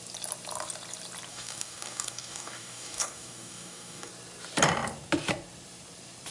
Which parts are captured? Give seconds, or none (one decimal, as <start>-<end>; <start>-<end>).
0.0-1.3; 4.1-6.3